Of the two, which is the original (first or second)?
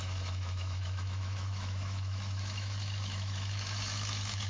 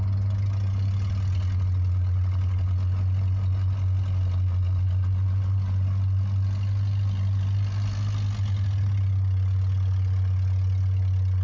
second